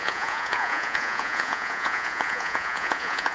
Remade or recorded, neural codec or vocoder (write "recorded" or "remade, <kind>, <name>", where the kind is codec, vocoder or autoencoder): remade, vocoder, Vocos